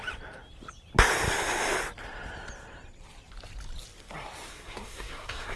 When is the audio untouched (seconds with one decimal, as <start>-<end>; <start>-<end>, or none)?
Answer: 0.0-4.5